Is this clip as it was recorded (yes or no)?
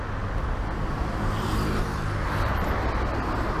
yes